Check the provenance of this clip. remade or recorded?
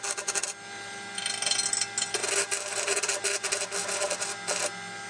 recorded